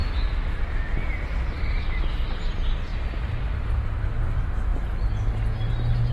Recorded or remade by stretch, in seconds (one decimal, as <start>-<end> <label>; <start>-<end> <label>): 0.0-0.6 remade; 0.6-1.0 recorded; 1.0-1.8 remade; 1.8-6.1 recorded